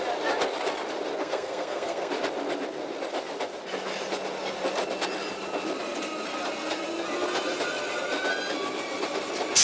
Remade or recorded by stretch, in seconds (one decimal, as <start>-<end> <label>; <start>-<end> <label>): 0.0-1.2 recorded; 1.2-2.1 remade; 2.1-9.6 recorded